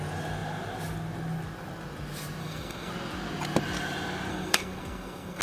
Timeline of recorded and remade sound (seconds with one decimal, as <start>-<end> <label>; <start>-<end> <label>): 0.0-2.4 recorded; 2.4-2.9 remade; 2.9-4.3 recorded; 4.3-5.4 remade